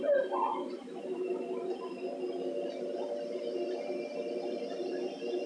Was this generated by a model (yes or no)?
no